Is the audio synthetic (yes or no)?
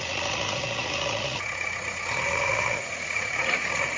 yes